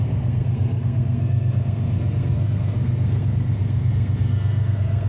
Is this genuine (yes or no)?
no